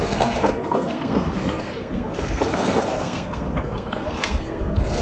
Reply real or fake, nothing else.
fake